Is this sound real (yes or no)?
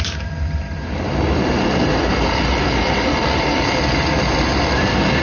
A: no